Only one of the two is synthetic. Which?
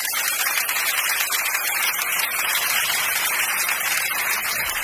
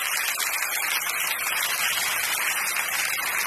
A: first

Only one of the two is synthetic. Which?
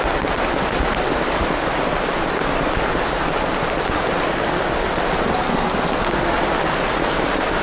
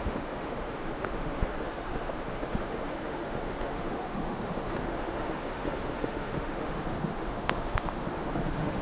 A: second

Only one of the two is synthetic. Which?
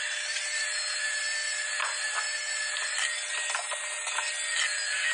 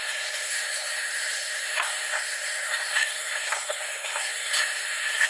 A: second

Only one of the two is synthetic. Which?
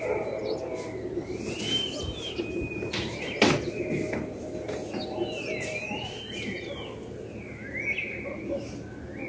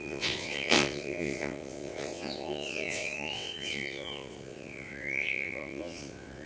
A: second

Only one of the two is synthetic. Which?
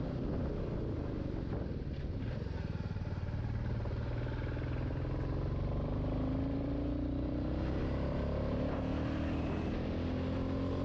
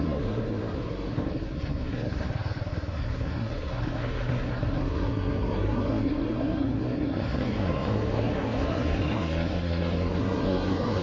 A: second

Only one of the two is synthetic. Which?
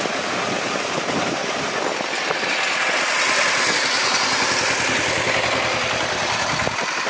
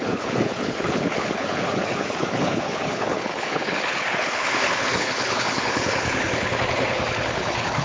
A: second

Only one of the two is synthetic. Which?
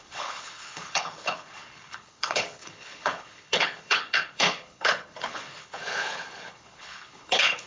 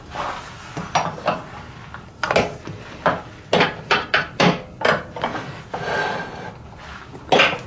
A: first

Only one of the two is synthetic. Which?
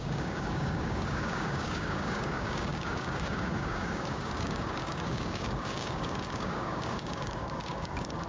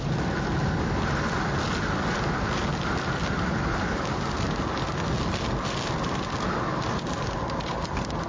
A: first